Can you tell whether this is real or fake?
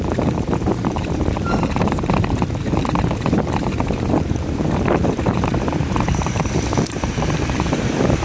fake